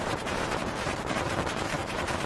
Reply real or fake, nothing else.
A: fake